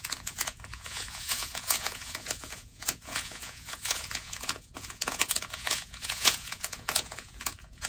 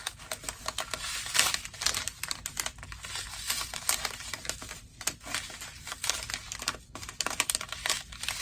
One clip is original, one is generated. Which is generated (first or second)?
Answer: first